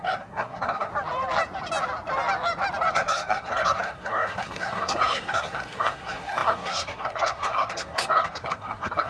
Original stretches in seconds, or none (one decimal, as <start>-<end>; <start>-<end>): 0.9-2.9